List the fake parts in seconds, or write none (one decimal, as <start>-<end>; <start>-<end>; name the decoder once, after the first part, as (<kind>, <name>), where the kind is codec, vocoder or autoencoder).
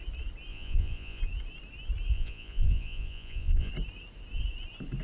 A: 0.5-1.2 (vocoder, Vocos); 2.1-3.7